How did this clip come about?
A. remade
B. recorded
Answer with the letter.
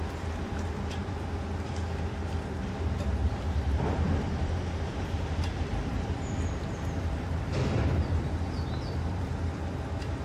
A